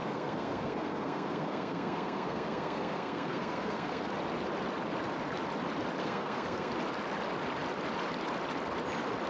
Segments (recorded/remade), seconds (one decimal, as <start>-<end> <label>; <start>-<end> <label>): 0.0-4.1 remade; 4.1-6.0 recorded; 6.0-6.7 remade; 6.7-9.3 recorded